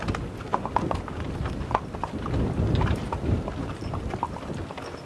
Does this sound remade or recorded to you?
recorded